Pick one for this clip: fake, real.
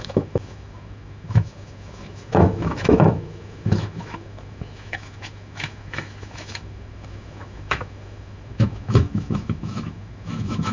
fake